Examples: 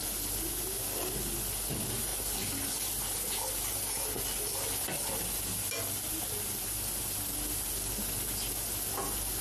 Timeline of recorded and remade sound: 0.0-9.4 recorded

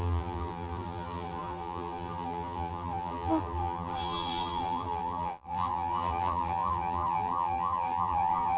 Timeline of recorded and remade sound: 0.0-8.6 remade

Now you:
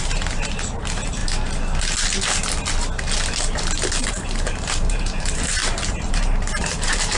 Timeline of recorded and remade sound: 0.0-1.2 remade; 1.2-4.1 recorded; 4.1-7.2 remade

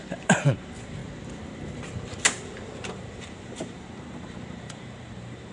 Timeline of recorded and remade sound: 0.0-1.0 remade; 1.0-2.4 recorded; 2.4-5.5 remade